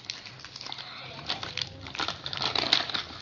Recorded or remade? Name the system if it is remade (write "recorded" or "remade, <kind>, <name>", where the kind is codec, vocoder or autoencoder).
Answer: recorded